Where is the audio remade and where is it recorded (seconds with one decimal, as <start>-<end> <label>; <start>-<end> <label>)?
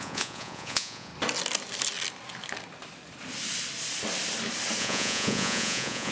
0.0-1.1 remade; 1.1-4.8 recorded; 4.8-6.1 remade